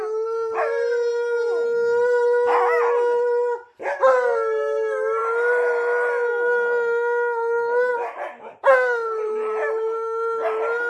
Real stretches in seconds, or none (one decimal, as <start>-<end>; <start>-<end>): 0.0-10.9